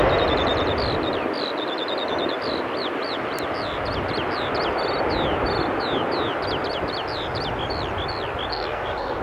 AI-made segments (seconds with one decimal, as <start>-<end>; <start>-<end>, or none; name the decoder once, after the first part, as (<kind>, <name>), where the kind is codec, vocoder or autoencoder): 8.5-9.2 (codec, SNAC)